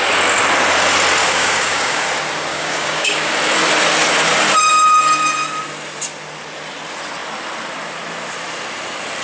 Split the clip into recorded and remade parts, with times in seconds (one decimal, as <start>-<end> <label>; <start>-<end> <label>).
0.0-1.2 recorded; 1.2-2.0 remade; 2.0-2.5 recorded; 2.5-3.3 remade; 3.3-9.2 recorded